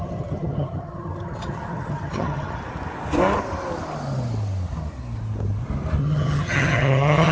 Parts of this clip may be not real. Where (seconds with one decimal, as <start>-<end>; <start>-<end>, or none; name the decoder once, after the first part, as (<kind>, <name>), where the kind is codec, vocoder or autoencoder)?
0.0-2.6 (vocoder, HiFi-GAN); 6.0-7.3